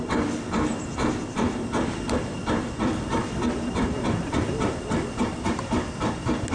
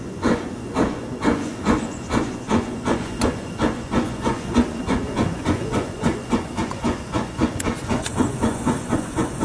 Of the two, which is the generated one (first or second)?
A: second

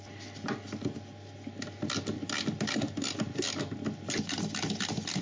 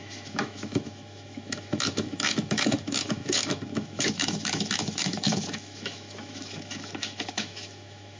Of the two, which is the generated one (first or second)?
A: second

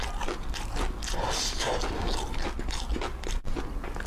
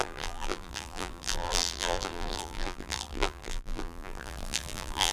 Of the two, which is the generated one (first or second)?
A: second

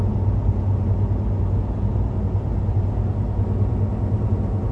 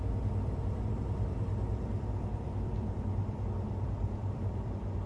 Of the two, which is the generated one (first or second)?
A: second